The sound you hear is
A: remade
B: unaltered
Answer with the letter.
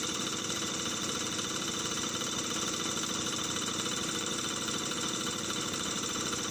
A